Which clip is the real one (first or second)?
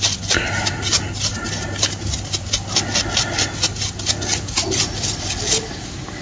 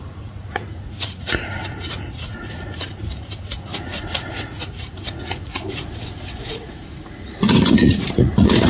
first